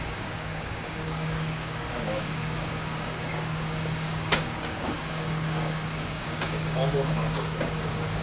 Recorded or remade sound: remade